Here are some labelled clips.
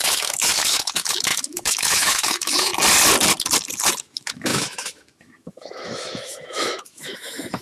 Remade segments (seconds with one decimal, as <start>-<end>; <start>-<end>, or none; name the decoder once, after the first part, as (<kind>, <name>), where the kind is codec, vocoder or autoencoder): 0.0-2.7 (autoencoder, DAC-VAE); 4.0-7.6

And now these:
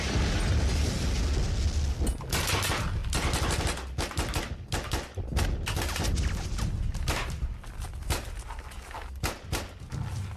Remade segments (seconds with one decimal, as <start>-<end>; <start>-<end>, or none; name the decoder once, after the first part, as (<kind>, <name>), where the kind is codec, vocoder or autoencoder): none

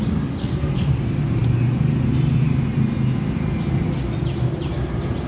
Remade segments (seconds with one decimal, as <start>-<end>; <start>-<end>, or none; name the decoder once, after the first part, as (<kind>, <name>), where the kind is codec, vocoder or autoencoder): 0.4-0.9 (codec, SNAC)

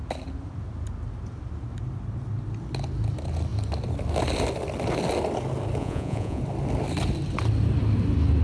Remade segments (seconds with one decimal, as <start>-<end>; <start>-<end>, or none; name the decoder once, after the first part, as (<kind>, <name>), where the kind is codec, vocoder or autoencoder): 5.8-6.4 (vocoder, Vocos)

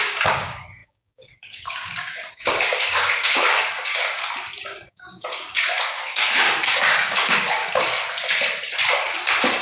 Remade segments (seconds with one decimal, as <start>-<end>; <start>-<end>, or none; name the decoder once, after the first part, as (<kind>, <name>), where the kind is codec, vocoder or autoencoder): 0.0-4.2 (codec, DAC); 4.9-7.6

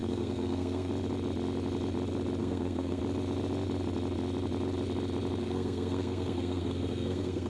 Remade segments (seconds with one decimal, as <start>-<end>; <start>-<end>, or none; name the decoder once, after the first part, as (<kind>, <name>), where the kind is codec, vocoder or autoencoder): 0.0-0.9 (codec, SNAC); 2.4-3.0; 5.4-7.5